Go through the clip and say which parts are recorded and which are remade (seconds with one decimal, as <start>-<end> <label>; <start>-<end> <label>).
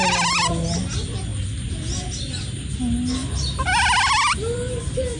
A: 0.0-5.2 recorded